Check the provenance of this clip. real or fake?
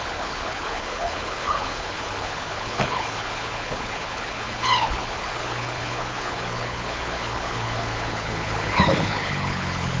fake